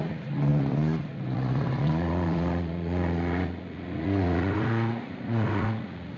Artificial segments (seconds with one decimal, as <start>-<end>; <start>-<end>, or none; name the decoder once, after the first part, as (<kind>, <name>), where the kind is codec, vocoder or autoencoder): 0.0-6.2 (vocoder, Vocos)